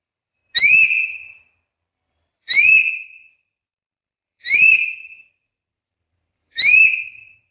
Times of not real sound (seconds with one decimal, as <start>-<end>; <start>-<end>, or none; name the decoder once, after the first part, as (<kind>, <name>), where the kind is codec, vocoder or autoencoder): 0.0-0.4 (vocoder, BigVGAN v2); 2.1-2.8; 3.3-7.5